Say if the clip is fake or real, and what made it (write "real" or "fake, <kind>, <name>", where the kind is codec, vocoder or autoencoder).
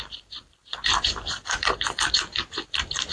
fake, vocoder, BigVGAN v2